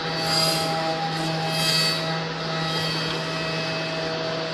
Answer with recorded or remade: recorded